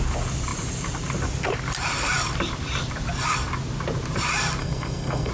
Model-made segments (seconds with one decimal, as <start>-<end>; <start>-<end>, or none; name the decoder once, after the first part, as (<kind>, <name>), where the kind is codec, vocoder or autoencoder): 4.6-5.3 (codec, SNAC)